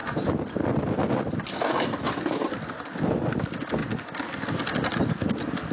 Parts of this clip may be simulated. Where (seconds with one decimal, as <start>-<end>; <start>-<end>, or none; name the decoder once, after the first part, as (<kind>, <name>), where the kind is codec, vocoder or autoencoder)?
none